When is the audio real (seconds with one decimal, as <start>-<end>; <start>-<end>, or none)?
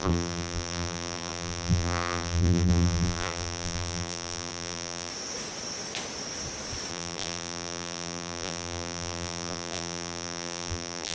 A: 5.1-6.9